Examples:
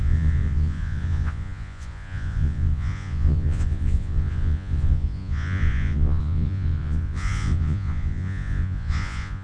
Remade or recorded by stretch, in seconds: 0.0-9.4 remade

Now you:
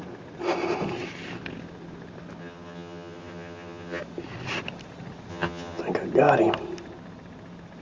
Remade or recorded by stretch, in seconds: 0.0-2.4 recorded; 2.4-4.0 remade; 4.0-5.3 recorded; 5.3-5.8 remade; 5.8-7.8 recorded

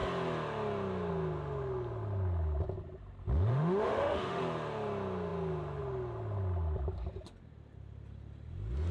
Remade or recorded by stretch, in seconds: 0.0-3.5 recorded; 3.5-4.4 remade; 4.4-8.9 recorded

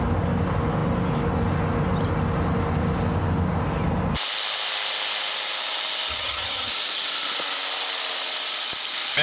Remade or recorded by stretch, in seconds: 0.0-6.1 recorded; 6.1-6.7 remade; 6.7-9.2 recorded

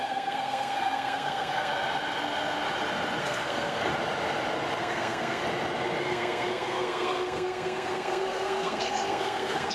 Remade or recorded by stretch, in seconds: 0.0-1.7 remade; 1.7-3.2 recorded; 3.2-3.9 remade; 3.9-4.8 recorded; 4.8-5.4 remade; 5.4-6.0 recorded; 6.0-9.7 remade

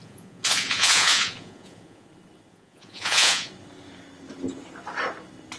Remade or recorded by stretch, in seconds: 0.0-2.1 remade; 2.1-2.5 recorded; 2.5-3.5 remade; 3.5-5.6 recorded

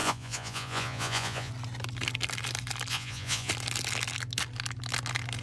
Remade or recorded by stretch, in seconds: 0.0-1.5 remade; 1.5-2.9 recorded; 2.9-3.5 remade; 3.5-5.4 recorded